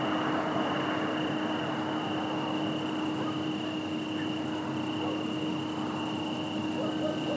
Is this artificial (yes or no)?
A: no